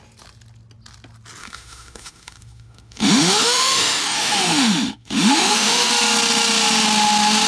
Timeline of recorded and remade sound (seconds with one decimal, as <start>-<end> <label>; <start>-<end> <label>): 0.0-1.4 recorded; 1.4-5.9 remade; 5.9-7.5 recorded